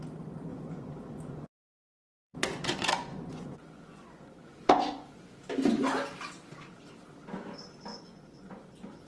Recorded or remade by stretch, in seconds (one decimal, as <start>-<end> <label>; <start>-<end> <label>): 0.0-0.5 recorded; 0.5-5.1 remade; 5.1-7.9 recorded; 7.9-8.7 remade; 8.7-9.1 recorded